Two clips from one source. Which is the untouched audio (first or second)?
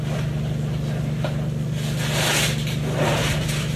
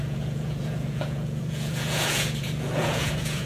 first